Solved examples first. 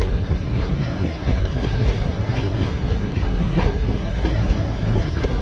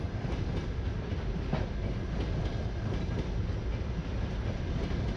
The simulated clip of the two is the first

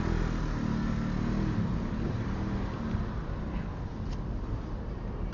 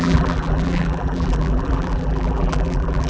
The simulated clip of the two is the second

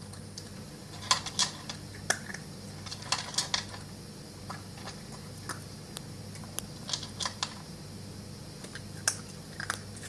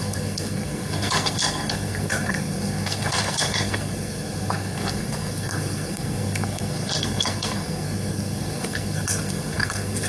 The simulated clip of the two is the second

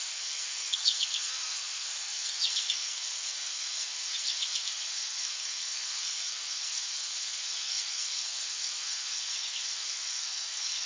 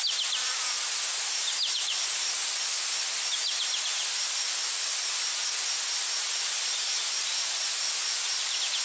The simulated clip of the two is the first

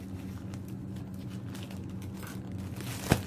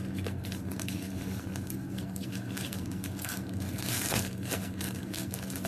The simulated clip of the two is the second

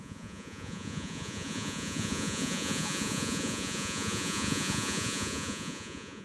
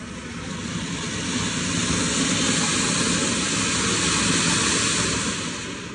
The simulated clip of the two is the first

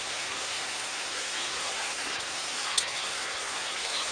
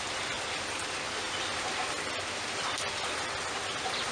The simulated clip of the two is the first